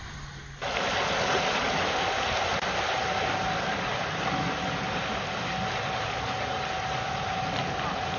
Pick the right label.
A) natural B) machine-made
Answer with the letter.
A